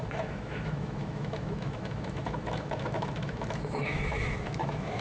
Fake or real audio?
fake